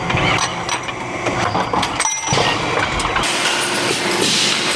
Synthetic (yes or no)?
no